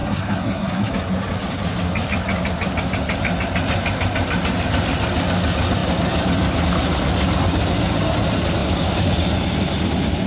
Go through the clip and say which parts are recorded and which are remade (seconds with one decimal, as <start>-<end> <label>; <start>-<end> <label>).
0.0-0.9 remade; 0.9-10.3 recorded